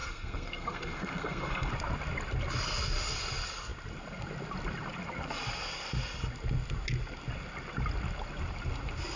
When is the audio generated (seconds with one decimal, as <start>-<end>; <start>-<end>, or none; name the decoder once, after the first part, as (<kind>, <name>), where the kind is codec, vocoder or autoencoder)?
0.0-1.7 (codec, SNAC)